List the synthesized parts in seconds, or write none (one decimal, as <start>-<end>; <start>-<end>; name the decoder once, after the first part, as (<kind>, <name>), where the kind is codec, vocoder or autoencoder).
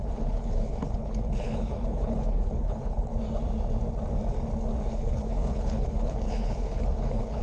0.0-3.1 (codec, HILCodec); 4.9-7.4